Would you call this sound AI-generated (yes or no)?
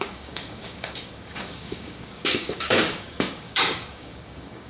yes